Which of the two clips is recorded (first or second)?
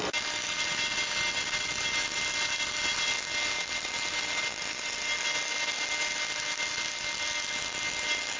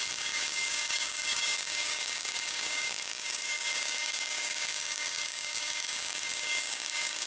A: first